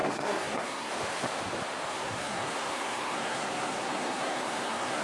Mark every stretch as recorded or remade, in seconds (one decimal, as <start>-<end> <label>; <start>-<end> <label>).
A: 0.0-0.9 remade; 0.9-1.9 recorded; 1.9-5.0 remade